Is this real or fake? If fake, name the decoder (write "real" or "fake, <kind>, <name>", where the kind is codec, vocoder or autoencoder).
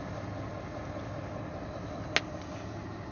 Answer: real